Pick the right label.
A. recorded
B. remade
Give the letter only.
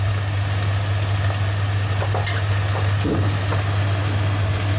A